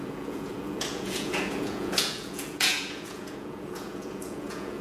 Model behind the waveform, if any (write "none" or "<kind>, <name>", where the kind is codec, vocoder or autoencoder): vocoder, Vocos